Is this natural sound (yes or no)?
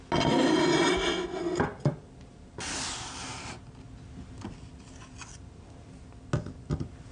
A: yes